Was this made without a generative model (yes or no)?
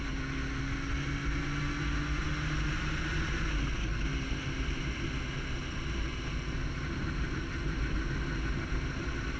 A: yes